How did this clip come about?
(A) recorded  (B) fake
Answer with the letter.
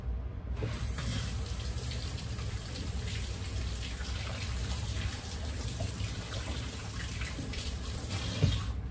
B